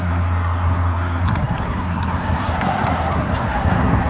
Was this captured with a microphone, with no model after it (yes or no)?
no